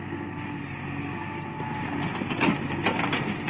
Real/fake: real